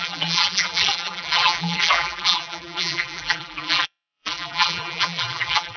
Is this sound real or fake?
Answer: fake